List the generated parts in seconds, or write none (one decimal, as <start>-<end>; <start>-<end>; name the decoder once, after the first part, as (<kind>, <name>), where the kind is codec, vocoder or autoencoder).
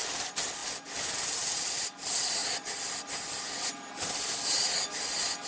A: none